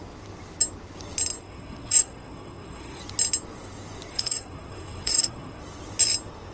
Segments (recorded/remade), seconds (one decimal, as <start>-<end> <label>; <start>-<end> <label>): 0.0-1.4 recorded; 1.4-3.0 remade; 3.0-4.1 recorded; 4.1-5.6 remade; 5.6-6.5 recorded